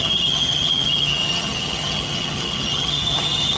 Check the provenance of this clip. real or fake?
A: fake